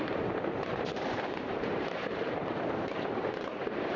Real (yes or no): no